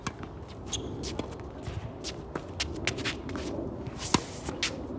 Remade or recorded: recorded